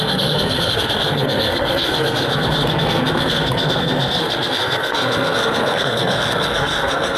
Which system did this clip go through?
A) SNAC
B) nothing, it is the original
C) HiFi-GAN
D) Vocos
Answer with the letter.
A